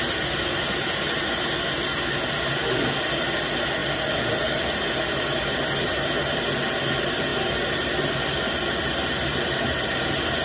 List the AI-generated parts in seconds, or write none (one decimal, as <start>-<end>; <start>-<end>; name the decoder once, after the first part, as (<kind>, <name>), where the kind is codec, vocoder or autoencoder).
none